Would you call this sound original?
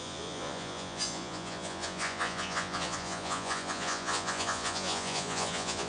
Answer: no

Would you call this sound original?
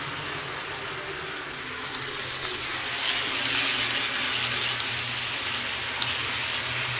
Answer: yes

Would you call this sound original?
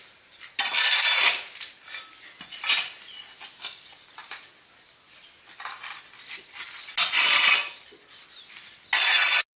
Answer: yes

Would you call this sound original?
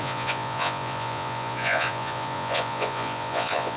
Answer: no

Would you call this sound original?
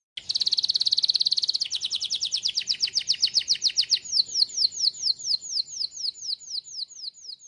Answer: yes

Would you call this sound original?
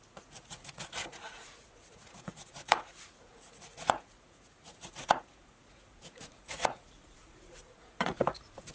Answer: no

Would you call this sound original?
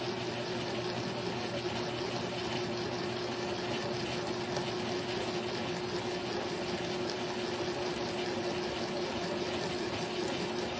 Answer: yes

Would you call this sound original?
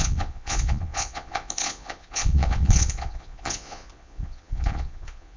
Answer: no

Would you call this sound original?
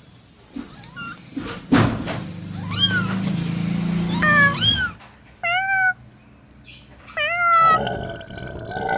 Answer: yes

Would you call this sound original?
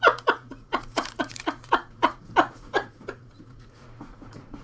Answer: no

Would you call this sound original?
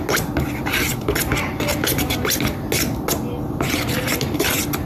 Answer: yes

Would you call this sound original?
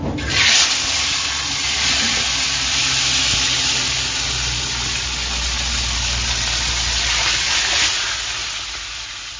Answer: yes